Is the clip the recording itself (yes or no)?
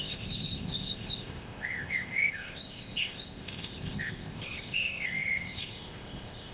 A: no